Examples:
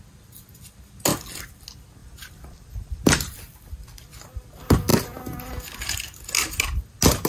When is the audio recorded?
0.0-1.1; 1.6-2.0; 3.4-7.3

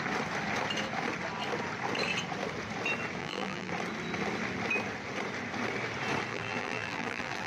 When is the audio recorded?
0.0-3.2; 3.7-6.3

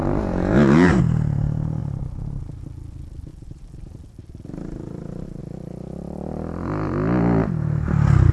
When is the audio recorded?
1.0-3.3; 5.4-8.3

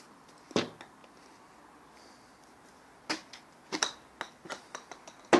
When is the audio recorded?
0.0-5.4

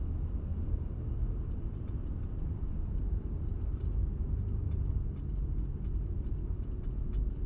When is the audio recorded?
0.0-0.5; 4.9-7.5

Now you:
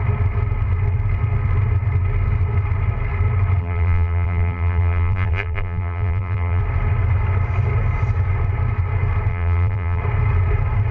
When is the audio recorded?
0.0-3.6; 6.6-9.3; 10.0-10.9

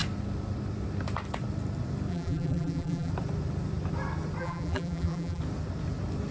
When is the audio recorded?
0.0-2.1; 3.1-4.4; 5.4-6.3

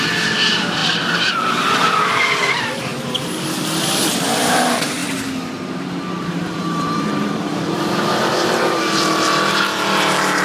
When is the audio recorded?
2.9-4.0; 5.0-6.2